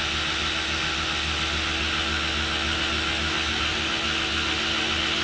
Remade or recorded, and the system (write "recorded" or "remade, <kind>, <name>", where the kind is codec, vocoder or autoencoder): recorded